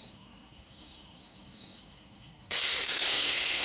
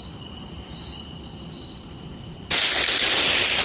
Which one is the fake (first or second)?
first